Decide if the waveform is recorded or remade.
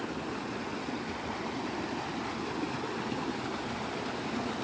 recorded